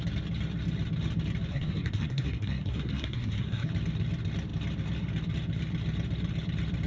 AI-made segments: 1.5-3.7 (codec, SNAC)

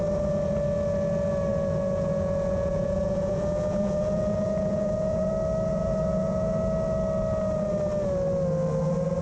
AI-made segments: 1.5-5.3 (vocoder, Vocos); 5.7-6.6

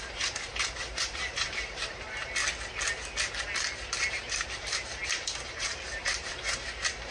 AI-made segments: 0.0-2.4 (vocoder, BigVGAN v2); 4.1-7.1

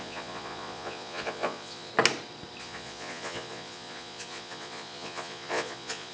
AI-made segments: 0.0-1.9 (vocoder, Vocos); 2.6-6.1

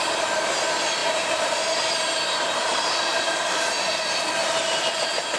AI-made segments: 1.0-3.8 (vocoder, BigVGAN v2); 4.4-5.4

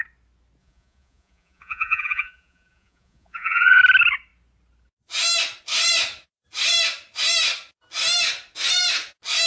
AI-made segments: 0.6-3.8 (vocoder, Vocos)

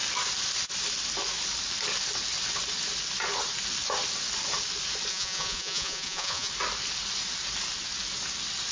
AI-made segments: 5.1-6.5 (vocoder, Vocos)